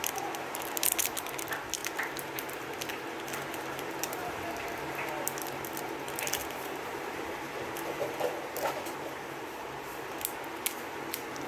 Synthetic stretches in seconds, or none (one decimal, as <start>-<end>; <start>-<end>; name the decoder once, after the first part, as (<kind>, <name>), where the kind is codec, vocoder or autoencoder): 4.2-5.1 (vocoder, BigVGAN v2); 6.4-8.4; 9.1-9.7